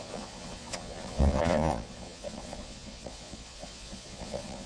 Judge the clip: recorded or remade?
remade